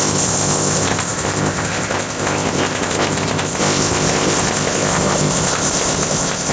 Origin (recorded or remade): remade